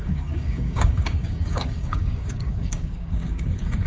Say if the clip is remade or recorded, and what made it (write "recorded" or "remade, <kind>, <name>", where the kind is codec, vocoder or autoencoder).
remade, codec, DAC